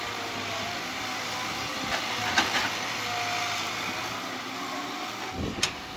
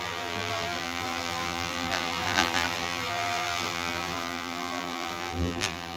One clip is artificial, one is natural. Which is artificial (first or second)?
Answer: second